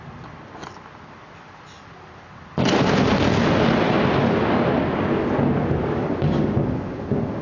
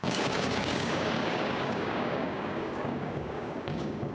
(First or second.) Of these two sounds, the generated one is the second